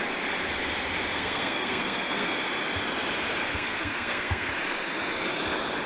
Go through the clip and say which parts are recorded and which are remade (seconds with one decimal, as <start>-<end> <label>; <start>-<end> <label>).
0.0-1.1 recorded; 1.1-2.4 remade; 2.4-3.4 recorded; 3.4-4.5 remade; 4.5-5.9 recorded